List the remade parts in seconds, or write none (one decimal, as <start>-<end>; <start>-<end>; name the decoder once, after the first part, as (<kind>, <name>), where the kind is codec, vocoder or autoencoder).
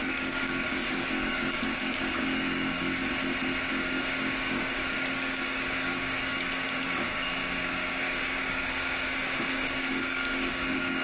0.0-3.1 (codec, DAC); 3.7-11.0